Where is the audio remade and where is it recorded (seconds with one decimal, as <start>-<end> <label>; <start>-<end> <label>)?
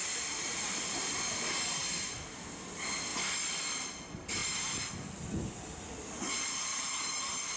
0.0-1.0 remade; 1.0-7.6 recorded